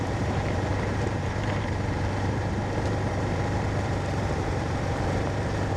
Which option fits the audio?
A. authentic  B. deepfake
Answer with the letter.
B